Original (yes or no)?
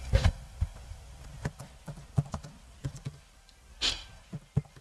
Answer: no